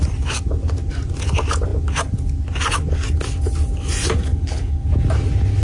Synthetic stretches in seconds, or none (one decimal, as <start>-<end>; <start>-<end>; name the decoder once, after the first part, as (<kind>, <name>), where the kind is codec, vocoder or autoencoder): 4.3-4.9 (codec, HILCodec)